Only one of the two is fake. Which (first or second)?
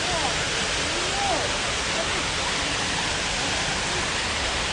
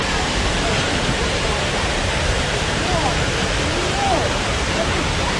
second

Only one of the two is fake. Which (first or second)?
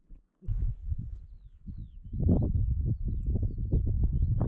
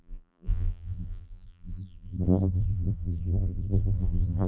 second